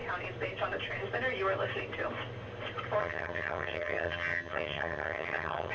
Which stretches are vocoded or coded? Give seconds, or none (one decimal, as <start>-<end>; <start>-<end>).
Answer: 3.0-5.7